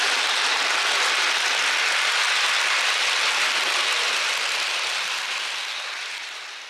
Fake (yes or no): no